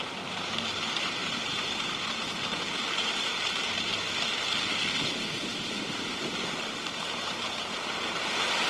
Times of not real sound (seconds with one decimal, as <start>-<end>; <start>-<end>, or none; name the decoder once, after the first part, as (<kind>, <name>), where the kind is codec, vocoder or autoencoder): 0.0-3.9 (vocoder, BigVGAN v2); 5.7-8.7

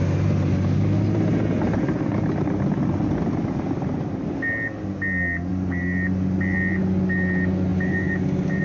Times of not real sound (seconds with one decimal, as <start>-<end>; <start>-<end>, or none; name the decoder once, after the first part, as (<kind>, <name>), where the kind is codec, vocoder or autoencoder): none

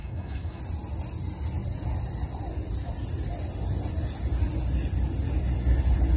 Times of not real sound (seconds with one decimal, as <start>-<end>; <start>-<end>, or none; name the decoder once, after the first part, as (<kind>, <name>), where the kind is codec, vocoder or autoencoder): 0.0-0.6 (autoencoder, DAC-VAE)